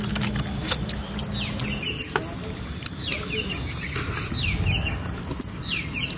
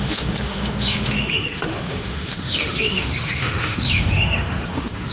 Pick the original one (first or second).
first